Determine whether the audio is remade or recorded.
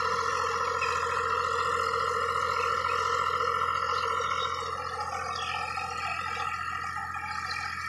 recorded